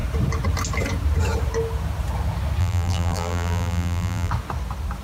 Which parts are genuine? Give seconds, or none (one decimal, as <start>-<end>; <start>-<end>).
0.0-2.6; 4.3-5.0